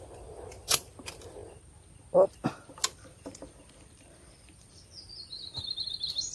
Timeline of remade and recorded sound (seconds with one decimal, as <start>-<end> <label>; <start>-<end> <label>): 0.0-1.4 remade; 1.4-2.3 recorded; 2.3-6.3 remade